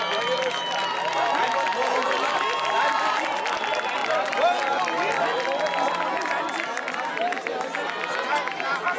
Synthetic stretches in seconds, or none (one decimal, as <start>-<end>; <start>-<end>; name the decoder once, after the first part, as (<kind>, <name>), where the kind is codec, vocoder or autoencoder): none

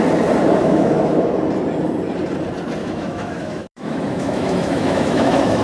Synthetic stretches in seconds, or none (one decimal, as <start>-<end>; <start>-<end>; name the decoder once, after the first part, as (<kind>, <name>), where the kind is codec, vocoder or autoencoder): 0.6-1.3 (autoencoder, DAC-VAE); 2.8-5.6

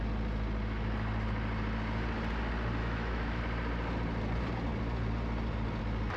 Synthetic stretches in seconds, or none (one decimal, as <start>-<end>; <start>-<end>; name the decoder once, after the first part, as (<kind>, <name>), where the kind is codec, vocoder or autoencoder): 2.8-3.4 (autoencoder, DAC-VAE)

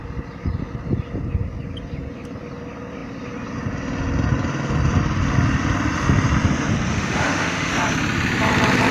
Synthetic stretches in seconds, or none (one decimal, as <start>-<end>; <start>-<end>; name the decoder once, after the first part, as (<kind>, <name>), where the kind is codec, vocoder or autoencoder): 6.9-7.7 (autoencoder, DAC-VAE)